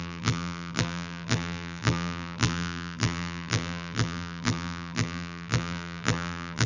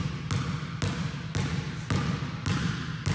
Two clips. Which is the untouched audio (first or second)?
second